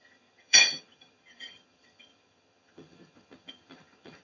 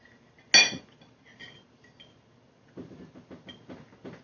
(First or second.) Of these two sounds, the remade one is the first